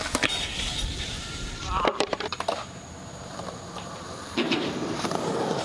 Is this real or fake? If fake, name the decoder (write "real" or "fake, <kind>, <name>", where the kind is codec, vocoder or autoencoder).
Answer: fake, vocoder, BigVGAN v2